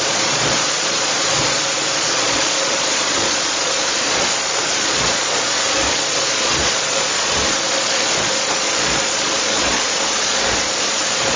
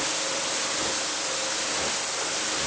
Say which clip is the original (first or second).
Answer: second